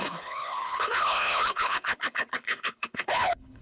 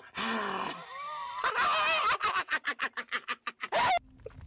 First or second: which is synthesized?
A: first